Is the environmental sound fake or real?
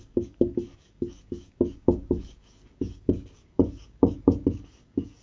fake